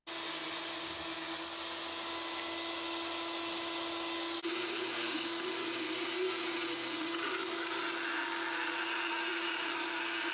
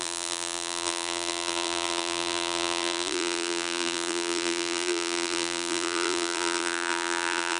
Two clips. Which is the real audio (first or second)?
first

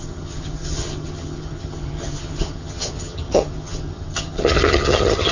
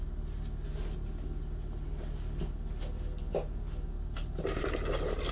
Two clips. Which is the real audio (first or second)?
second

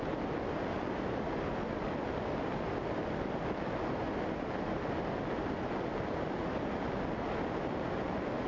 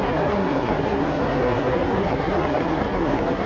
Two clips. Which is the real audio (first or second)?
first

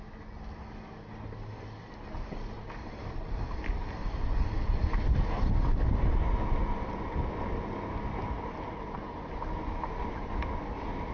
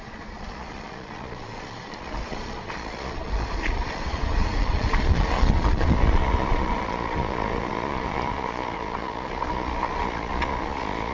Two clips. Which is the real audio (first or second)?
first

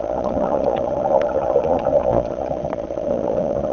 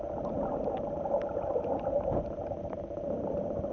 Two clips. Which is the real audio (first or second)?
second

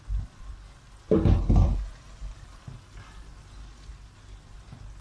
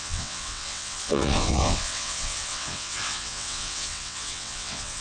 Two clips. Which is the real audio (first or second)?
first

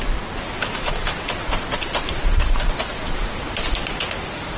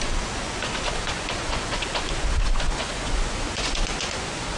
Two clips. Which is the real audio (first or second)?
first